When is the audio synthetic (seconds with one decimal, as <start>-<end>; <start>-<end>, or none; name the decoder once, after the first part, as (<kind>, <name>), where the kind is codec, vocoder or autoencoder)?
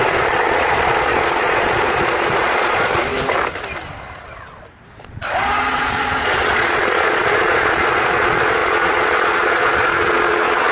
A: 0.0-3.1 (vocoder, Vocos); 4.9-10.7